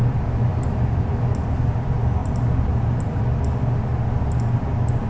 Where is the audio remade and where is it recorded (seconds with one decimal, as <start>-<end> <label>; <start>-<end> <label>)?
0.0-2.2 recorded; 2.2-3.2 remade; 3.2-5.1 recorded